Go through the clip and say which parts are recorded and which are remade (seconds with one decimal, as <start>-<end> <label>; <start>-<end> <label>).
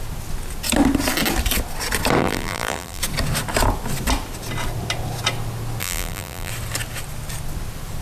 0.0-2.2 recorded; 2.2-3.0 remade; 3.0-5.8 recorded; 5.8-6.5 remade; 6.5-8.0 recorded